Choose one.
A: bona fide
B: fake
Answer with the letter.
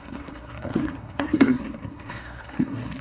B